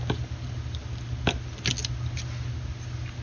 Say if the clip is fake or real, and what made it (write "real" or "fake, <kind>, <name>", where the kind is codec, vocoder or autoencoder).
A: real